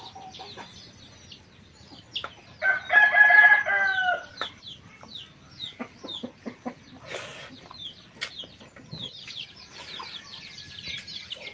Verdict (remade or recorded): recorded